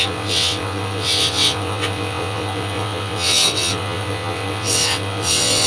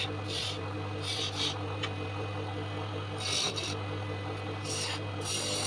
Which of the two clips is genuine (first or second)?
second